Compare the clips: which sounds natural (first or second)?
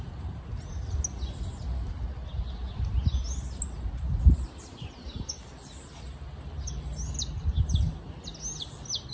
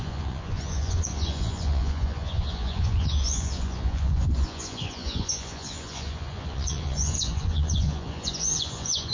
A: first